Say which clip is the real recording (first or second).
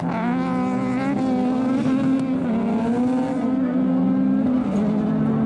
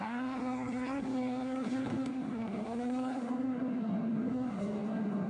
first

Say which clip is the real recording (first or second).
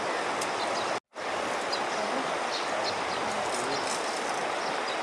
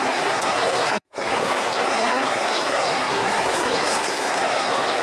first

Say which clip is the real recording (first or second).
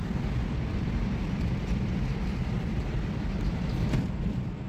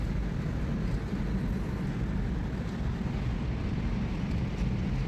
second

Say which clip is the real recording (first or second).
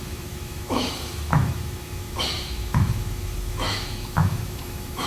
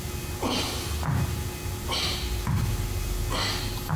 second